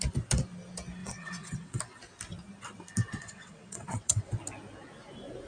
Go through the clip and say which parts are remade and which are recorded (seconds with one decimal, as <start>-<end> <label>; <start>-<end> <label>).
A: 0.0-1.0 recorded; 1.0-1.8 remade; 1.8-3.2 recorded; 3.2-4.3 remade; 4.3-5.5 recorded

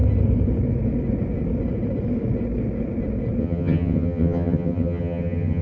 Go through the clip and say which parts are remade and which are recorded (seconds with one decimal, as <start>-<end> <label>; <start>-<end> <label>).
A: 0.0-3.4 recorded; 3.4-5.6 remade

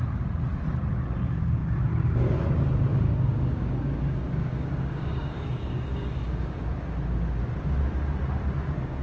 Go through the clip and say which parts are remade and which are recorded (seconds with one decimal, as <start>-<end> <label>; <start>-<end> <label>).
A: 0.0-2.9 recorded; 2.9-6.6 remade; 6.6-9.0 recorded

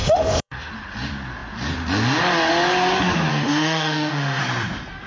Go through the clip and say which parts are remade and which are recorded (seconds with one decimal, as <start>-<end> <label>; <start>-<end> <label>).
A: 0.0-0.7 remade; 0.7-3.3 recorded; 3.3-4.4 remade; 4.4-5.1 recorded

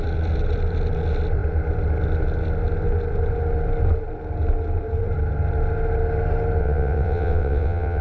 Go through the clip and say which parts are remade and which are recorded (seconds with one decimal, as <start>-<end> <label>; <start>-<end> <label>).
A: 0.0-6.6 recorded; 6.6-8.0 remade